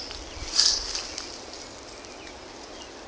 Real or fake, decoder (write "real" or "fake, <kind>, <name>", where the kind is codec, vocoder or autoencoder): real